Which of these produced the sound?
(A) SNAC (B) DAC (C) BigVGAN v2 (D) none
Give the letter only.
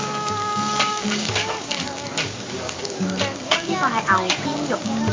B